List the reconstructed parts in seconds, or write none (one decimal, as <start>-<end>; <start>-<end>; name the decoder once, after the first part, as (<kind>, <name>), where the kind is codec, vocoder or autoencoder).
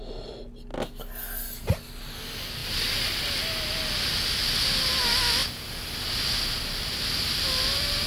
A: none